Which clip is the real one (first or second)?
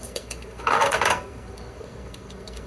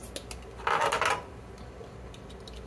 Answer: second